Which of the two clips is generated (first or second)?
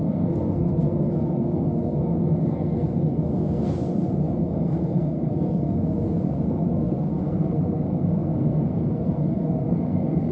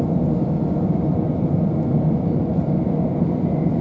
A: first